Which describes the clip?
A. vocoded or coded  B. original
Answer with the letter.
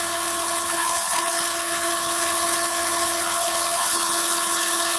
A